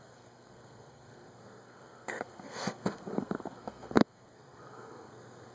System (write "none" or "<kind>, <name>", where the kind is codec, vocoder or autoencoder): codec, SNAC